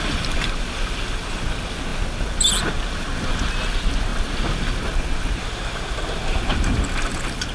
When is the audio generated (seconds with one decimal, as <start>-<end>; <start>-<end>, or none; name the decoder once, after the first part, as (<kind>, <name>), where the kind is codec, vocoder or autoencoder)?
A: none